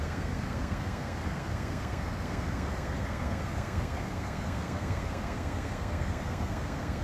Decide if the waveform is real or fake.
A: fake